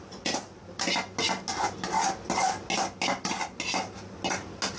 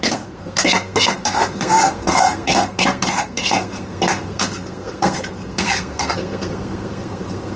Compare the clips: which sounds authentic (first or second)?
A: first